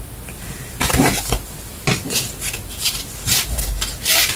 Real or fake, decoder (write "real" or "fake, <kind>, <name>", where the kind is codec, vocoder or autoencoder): real